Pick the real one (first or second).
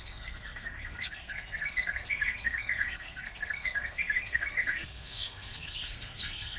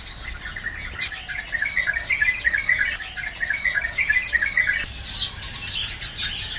second